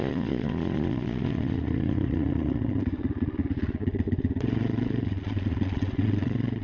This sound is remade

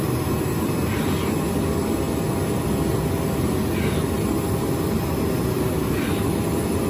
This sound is recorded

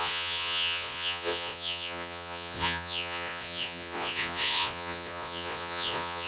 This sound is remade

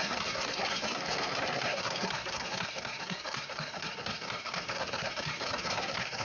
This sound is remade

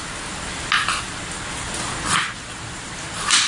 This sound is recorded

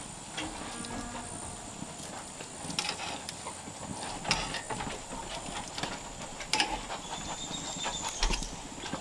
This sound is recorded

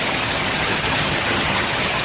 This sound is remade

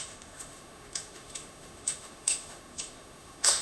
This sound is remade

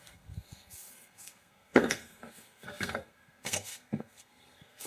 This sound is remade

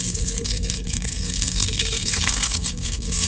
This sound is remade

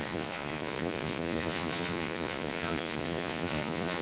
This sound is remade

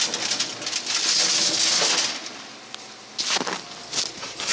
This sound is recorded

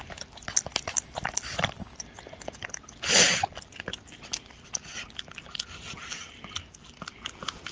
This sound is recorded